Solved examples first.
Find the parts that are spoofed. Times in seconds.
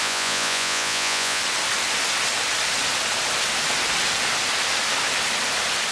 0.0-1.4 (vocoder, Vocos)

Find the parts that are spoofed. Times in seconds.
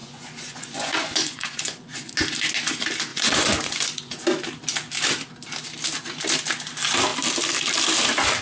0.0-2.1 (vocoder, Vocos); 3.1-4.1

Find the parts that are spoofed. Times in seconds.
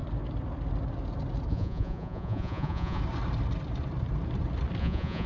1.5-3.0 (vocoder, Vocos); 4.8-5.3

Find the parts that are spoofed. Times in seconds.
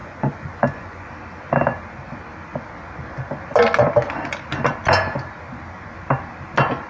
0.0-1.1 (vocoder, Vocos)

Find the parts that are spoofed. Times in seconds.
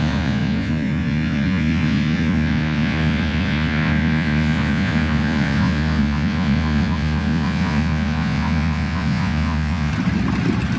0.0-9.9 (vocoder, Vocos)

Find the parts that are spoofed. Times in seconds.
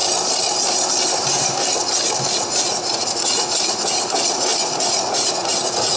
2.3-6.0 (vocoder, Vocos)